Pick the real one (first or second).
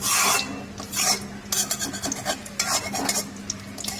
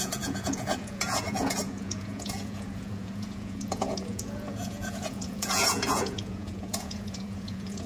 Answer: first